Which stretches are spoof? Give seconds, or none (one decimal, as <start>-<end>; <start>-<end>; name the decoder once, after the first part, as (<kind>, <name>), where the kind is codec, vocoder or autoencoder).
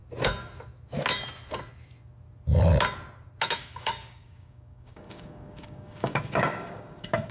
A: 3.5-7.3 (codec, DAC)